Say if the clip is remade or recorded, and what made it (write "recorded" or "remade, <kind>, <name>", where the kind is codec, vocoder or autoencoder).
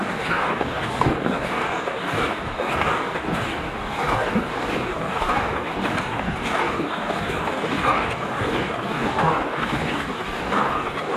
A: remade, codec, DAC